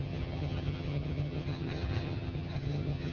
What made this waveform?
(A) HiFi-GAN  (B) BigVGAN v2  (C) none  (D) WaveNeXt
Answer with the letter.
A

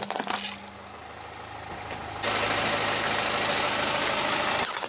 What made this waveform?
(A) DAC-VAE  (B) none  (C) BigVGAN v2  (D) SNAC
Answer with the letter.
B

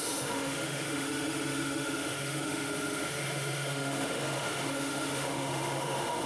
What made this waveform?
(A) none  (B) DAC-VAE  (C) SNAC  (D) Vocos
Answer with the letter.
B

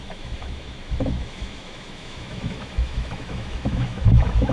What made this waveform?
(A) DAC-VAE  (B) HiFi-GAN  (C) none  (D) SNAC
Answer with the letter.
A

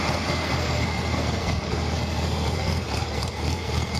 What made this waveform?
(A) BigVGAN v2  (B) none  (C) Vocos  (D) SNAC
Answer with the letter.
D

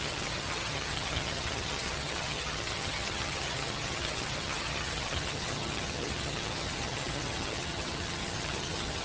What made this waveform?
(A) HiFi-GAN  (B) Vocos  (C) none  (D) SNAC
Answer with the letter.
A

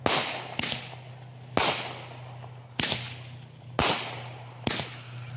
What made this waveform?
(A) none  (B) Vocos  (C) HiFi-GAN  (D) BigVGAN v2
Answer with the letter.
A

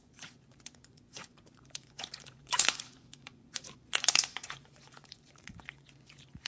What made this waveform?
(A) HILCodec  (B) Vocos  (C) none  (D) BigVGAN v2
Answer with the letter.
B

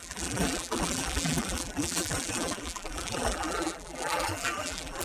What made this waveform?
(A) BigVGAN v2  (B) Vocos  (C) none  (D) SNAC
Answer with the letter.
A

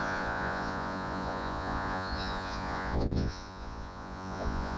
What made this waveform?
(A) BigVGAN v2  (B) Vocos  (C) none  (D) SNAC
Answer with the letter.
B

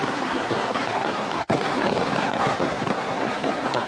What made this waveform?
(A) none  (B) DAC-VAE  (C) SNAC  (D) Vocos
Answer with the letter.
C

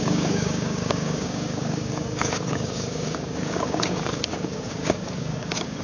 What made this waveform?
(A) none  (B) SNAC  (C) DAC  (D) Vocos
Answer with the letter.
C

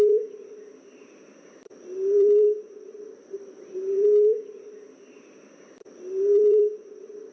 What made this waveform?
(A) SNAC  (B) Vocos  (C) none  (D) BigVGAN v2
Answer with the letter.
D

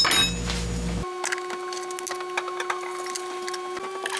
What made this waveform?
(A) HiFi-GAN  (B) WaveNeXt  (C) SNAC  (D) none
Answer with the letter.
D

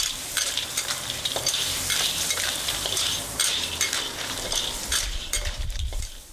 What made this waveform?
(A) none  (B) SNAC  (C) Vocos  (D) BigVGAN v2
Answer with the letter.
D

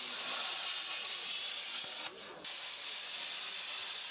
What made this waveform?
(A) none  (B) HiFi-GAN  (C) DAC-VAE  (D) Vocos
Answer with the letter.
A